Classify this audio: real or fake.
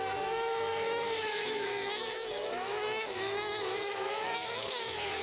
fake